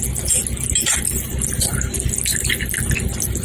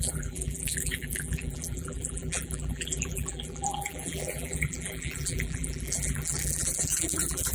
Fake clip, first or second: second